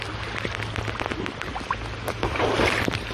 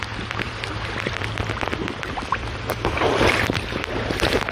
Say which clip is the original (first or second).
first